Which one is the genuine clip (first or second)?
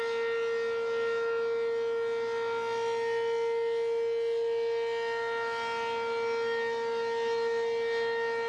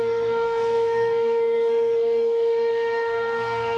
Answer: first